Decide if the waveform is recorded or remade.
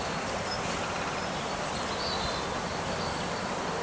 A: recorded